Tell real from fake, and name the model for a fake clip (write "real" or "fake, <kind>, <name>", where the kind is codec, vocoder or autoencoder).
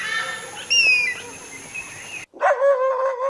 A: real